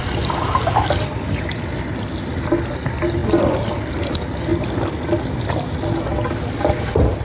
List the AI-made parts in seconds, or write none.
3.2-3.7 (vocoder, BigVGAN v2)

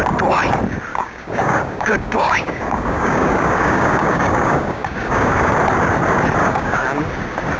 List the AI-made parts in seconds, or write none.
0.9-5.5 (codec, DAC); 6.4-7.0

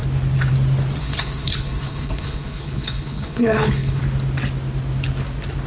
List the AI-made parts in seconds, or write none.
1.0-4.0 (codec, HILCodec)

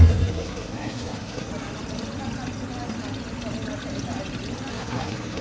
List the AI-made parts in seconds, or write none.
0.0-1.5 (codec, SNAC); 4.7-5.4

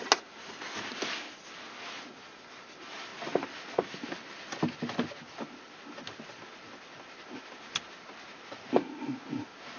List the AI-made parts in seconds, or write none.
none

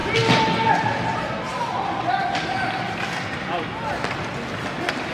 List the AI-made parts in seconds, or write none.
none

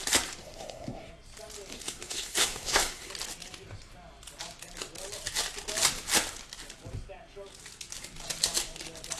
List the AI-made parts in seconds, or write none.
0.4-1.1 (codec, SNAC); 1.7-3.1

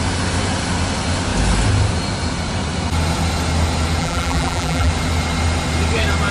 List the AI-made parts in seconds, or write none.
4.0-4.9 (vocoder, BigVGAN v2)